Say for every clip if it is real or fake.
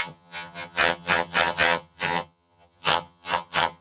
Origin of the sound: fake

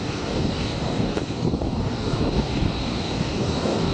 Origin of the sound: fake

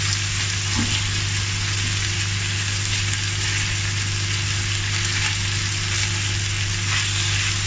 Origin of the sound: real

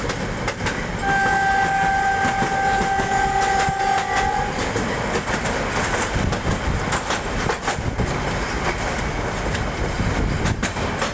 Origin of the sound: real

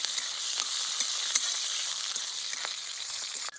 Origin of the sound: real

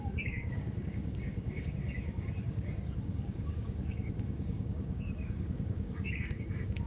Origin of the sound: fake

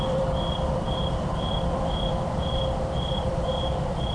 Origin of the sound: fake